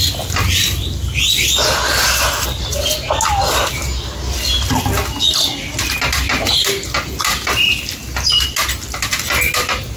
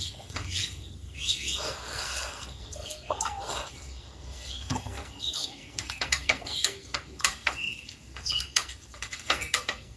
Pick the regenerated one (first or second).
second